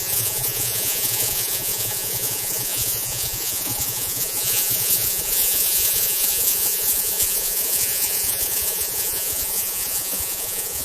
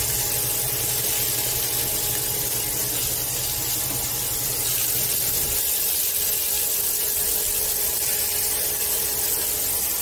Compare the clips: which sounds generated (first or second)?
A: first